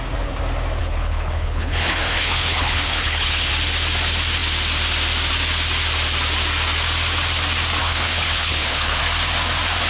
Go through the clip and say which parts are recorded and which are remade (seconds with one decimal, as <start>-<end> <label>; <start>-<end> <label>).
0.0-0.8 recorded; 0.8-3.5 remade; 3.5-7.8 recorded; 7.8-9.0 remade; 9.0-9.9 recorded